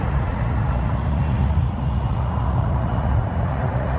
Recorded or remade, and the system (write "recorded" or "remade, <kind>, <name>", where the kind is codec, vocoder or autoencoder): remade, vocoder, Vocos